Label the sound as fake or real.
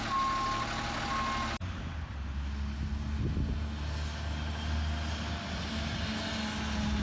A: real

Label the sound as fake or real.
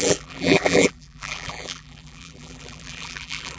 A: fake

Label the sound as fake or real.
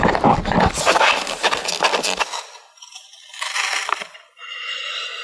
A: fake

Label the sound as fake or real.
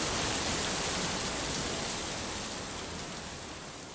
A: real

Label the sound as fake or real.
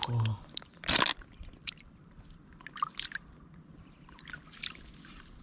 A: fake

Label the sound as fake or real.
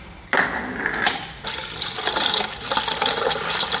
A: real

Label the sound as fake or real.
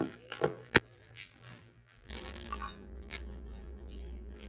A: fake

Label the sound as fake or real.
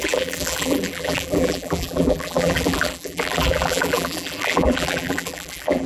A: fake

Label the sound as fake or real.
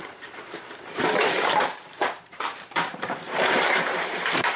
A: fake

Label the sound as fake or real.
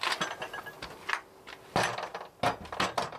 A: real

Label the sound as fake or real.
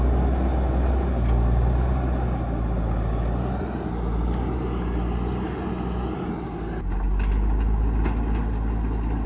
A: real